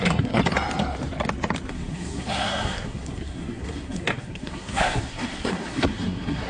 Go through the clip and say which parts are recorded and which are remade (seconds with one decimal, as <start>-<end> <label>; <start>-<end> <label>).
0.0-0.4 remade; 0.4-1.7 recorded; 1.7-6.5 remade